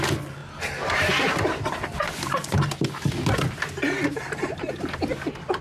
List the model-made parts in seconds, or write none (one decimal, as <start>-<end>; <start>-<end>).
none